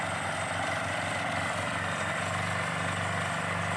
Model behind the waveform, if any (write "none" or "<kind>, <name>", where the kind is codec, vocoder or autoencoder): none